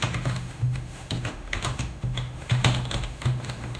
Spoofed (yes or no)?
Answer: yes